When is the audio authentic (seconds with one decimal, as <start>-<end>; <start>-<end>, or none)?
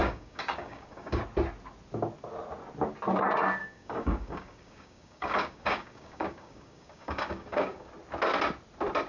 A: 1.2-3.6; 7.9-9.1